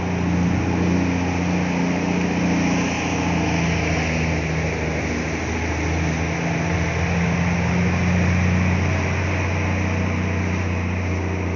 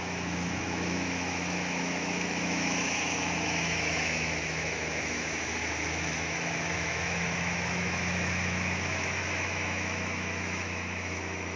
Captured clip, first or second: first